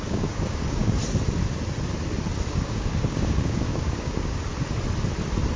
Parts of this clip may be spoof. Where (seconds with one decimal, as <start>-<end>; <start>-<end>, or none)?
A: 0.0-1.0; 2.5-4.5